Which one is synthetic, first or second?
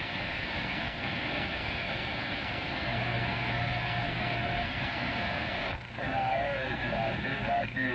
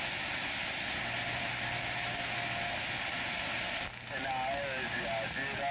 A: first